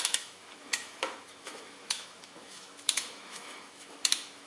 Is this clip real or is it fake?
fake